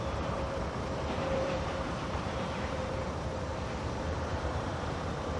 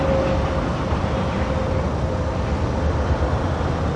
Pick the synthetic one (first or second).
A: first